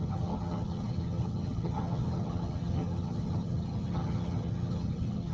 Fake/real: fake